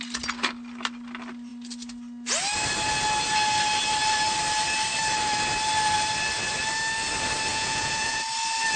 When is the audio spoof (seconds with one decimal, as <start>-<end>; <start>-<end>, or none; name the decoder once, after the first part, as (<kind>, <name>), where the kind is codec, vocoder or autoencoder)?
7.5-8.2 (vocoder, Vocos)